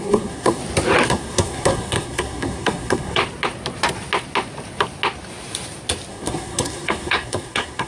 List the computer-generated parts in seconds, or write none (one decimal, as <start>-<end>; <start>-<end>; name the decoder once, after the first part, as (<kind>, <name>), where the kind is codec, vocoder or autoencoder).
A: 0.0-0.6 (codec, SNAC); 1.1-3.2; 6.1-7.9